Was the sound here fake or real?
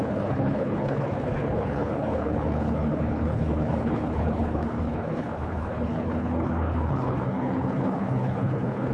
fake